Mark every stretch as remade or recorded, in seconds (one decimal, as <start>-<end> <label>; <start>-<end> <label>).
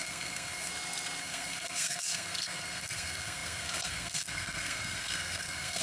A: 0.0-0.7 remade; 0.7-1.2 recorded; 1.2-5.8 remade